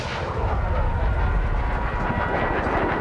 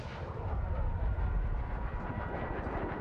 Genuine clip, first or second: first